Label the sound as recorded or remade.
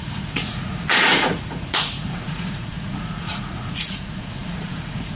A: remade